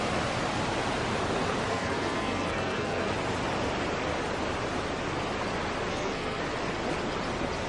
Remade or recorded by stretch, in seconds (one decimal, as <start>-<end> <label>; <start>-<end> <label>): 0.0-1.7 recorded; 1.7-3.1 remade; 3.1-5.9 recorded; 5.9-6.4 remade; 6.4-7.7 recorded